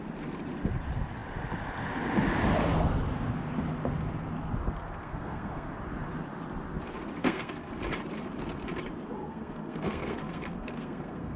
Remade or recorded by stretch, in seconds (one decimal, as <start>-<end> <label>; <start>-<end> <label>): 0.0-5.0 recorded; 5.0-5.7 remade; 5.7-7.2 recorded; 7.2-7.7 remade; 7.7-9.2 recorded; 9.2-11.4 remade